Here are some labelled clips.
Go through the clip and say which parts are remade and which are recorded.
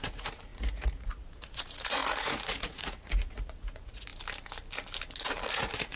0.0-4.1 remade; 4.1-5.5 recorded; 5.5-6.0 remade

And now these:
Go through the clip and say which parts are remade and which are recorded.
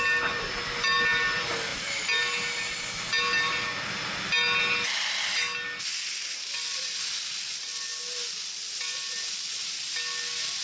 0.0-10.6 recorded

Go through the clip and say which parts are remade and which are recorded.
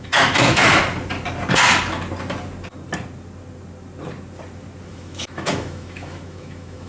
0.0-0.8 remade; 0.8-4.9 recorded; 4.9-6.9 remade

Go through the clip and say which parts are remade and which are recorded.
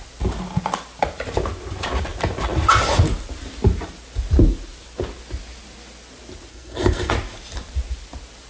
0.0-6.5 recorded; 6.5-7.1 remade; 7.1-8.5 recorded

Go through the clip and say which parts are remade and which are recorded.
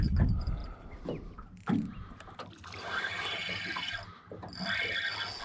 0.0-5.4 recorded